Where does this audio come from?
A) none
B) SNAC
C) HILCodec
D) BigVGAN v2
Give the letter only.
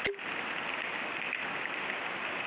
A